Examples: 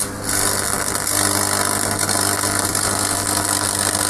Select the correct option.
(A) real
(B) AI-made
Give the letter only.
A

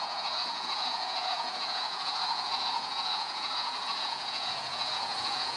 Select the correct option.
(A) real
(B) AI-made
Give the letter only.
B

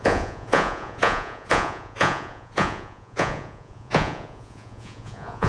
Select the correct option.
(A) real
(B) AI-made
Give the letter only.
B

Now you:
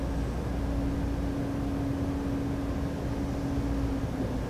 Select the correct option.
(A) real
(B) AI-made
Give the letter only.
A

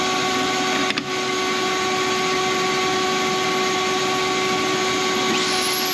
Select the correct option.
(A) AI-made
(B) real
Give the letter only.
B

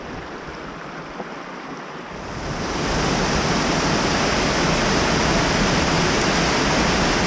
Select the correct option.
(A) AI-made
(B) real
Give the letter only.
B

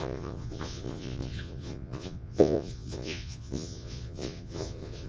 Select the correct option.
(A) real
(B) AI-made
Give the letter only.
B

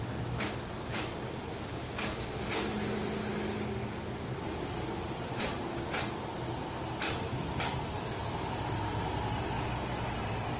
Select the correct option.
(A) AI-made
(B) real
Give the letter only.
B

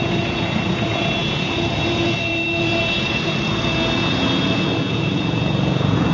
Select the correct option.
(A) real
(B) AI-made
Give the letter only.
B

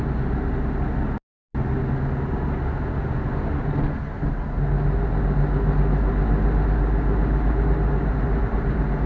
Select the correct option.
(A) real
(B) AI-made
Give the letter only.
A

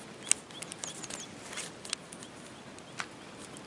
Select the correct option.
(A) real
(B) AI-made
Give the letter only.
A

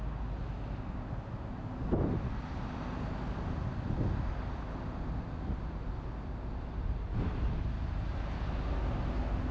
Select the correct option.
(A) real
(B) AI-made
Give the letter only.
A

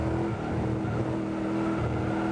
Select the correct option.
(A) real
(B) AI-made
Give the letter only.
A